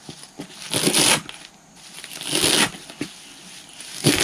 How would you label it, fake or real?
real